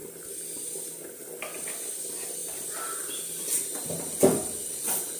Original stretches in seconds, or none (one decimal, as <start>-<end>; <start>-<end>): 0.0-2.4; 4.2-5.2